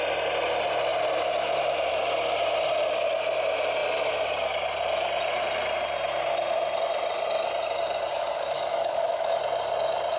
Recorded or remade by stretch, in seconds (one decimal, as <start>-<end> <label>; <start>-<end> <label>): 0.0-8.1 recorded; 8.1-9.4 remade; 9.4-10.2 recorded